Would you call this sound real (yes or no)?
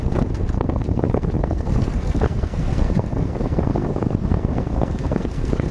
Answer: no